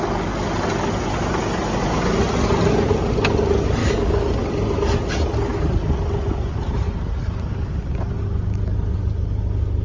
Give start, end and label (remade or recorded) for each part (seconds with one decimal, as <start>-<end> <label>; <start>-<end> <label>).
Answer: 0.0-3.8 recorded; 3.8-4.3 remade; 4.3-9.8 recorded